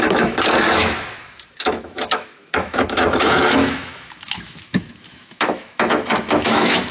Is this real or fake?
fake